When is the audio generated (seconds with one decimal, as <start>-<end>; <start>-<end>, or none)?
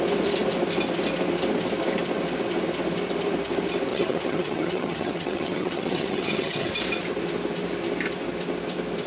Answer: 3.9-6.7